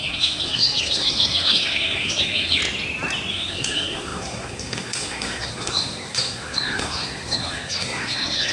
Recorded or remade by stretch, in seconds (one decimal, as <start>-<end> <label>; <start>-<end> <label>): 0.0-2.6 remade; 2.6-3.3 recorded; 3.3-8.5 remade